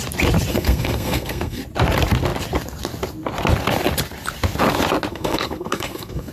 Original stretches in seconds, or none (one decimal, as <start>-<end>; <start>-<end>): 0.0-0.5; 1.6-5.1